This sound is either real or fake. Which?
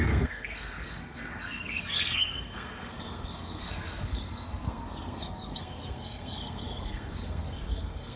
fake